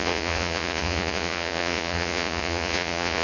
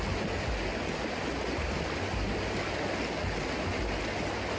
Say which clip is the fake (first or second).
first